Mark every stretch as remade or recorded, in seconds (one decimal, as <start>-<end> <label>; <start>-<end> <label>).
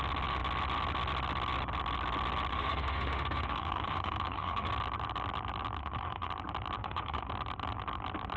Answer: 0.0-2.5 recorded; 2.5-4.7 remade; 4.7-5.8 recorded; 5.8-6.3 remade; 6.3-6.8 recorded; 6.8-7.3 remade; 7.3-8.4 recorded